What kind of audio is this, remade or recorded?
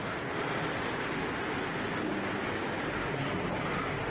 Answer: recorded